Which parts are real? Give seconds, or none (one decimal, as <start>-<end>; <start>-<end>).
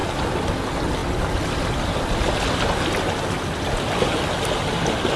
0.0-5.2